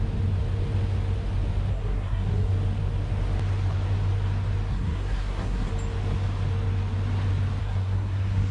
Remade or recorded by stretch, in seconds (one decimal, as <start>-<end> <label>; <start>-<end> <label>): 0.0-1.7 recorded; 1.7-2.5 remade; 2.5-4.7 recorded; 4.7-5.7 remade; 5.7-7.6 recorded; 7.6-8.5 remade